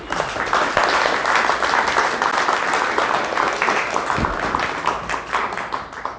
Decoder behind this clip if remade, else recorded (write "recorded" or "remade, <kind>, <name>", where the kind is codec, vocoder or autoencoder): recorded